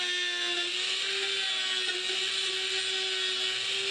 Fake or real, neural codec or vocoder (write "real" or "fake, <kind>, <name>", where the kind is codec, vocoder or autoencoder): real